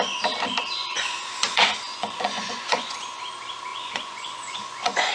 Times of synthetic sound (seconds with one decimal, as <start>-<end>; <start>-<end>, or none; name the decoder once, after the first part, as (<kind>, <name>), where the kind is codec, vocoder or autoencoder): 0.8-3.2 (vocoder, Vocos); 3.7-5.1